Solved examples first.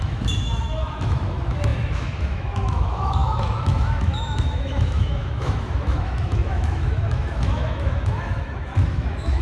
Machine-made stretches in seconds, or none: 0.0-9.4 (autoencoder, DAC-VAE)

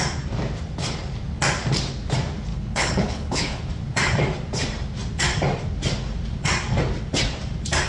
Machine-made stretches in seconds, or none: 2.5-3.7 (codec, HILCodec)